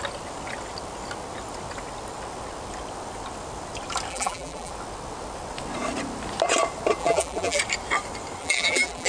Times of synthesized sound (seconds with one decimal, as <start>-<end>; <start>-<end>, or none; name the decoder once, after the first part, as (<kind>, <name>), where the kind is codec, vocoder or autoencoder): 4.1-4.7 (vocoder, BigVGAN v2); 7.0-7.6; 8.4-9.1